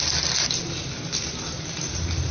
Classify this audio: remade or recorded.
recorded